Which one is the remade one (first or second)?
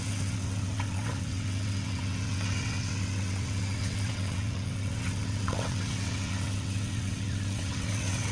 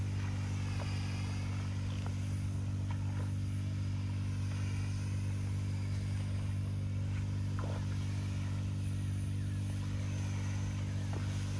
first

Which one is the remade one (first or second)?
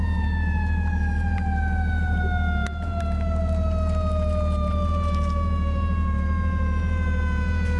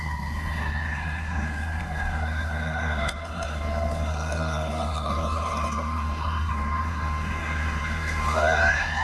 second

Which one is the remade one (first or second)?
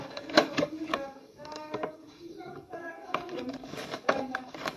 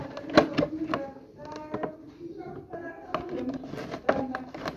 first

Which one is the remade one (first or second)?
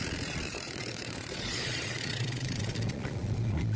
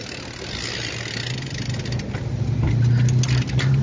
first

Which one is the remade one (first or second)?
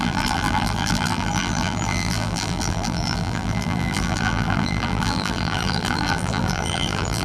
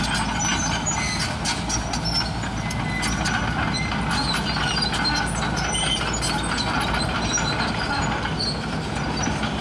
first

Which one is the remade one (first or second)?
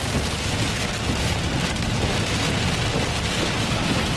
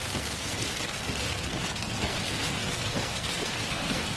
second